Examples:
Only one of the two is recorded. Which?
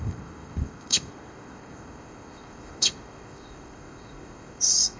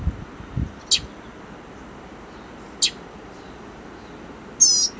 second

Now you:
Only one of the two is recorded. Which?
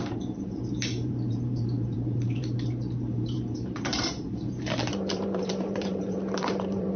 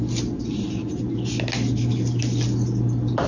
second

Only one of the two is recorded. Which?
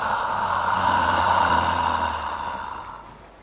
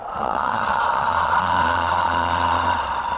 first